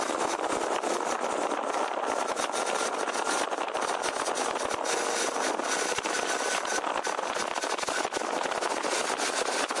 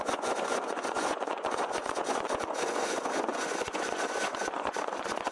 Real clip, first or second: first